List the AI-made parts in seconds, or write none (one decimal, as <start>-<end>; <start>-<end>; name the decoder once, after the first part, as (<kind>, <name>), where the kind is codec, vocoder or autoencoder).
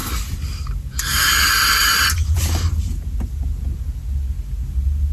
0.0-0.9 (vocoder, BigVGAN v2); 1.8-2.8